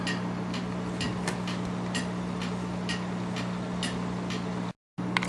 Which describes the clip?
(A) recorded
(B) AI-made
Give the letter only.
A